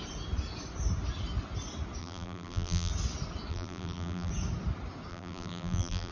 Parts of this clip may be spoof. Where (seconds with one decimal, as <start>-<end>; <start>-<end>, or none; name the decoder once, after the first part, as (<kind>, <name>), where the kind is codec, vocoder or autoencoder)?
2.0-2.9 (vocoder, BigVGAN v2); 3.5-4.3; 5.1-6.1